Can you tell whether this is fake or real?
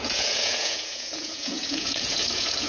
fake